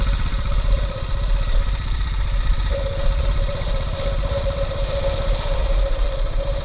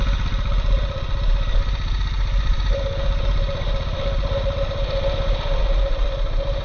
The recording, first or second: second